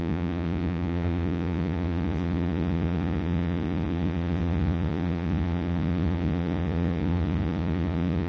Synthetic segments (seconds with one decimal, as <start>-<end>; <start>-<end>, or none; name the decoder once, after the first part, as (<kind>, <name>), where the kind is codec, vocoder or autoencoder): 0.0-8.3 (vocoder, Vocos)